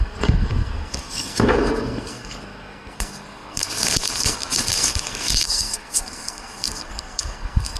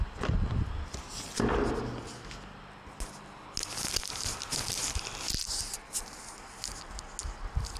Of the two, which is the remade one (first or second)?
first